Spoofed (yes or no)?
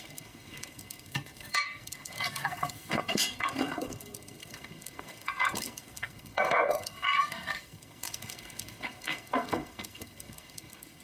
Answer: yes